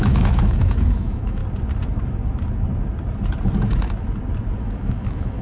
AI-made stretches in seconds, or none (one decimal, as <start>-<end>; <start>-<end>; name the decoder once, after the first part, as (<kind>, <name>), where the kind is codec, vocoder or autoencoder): 0.0-1.4 (autoencoder, DAC-VAE); 4.6-5.4